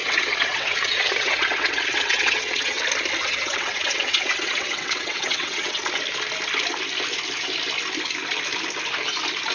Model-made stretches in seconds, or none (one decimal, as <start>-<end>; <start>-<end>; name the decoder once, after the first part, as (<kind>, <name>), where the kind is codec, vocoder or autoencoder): 0.0-2.8 (vocoder, WaveNeXt); 3.2-5.8

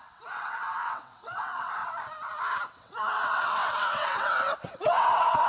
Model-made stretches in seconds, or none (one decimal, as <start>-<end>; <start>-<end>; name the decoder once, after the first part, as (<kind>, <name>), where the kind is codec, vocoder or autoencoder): 0.0-1.8 (vocoder, WaveNeXt); 2.7-5.5

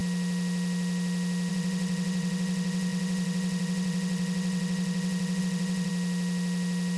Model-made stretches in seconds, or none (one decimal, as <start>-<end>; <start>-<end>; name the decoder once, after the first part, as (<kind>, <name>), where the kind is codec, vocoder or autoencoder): 1.5-5.9 (vocoder, WaveNeXt)

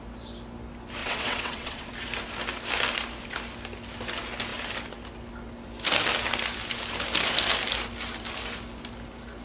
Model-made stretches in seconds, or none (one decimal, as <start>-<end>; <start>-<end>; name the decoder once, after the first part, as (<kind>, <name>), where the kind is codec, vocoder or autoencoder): 1.0-1.9 (vocoder, WaveNeXt)